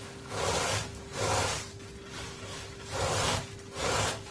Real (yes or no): yes